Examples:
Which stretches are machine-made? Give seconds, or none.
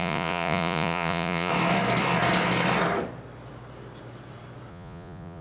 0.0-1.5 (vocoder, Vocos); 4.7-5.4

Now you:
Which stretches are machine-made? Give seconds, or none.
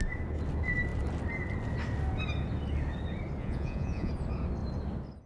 3.4-4.1 (vocoder, Vocos)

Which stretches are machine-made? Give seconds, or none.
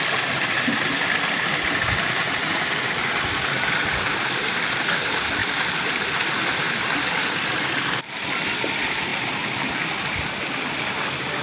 none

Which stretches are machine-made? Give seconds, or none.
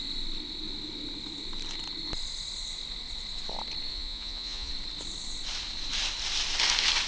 3.9-4.7 (vocoder, Vocos)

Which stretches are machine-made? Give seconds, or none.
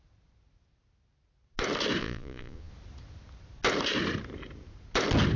2.0-2.7 (vocoder, Vocos)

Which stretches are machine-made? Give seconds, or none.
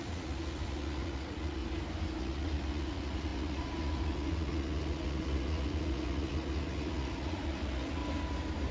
0.0-1.6 (vocoder, Vocos); 2.2-8.0